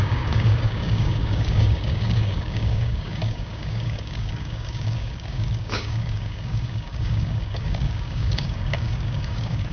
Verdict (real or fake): fake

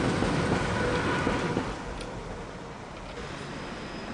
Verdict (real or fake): real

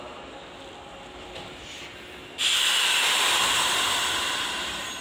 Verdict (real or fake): real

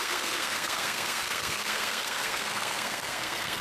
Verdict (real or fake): fake